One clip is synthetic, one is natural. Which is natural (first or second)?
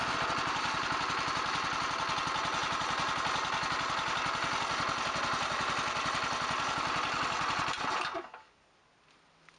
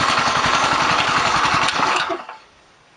first